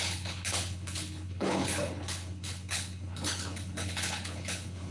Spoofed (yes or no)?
yes